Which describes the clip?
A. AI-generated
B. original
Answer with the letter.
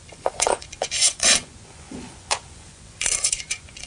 A